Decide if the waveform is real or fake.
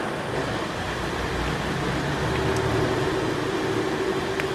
real